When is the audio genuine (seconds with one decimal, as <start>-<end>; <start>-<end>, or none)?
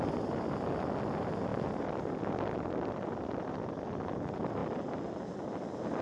0.0-1.5; 3.5-6.0